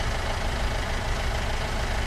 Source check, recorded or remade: recorded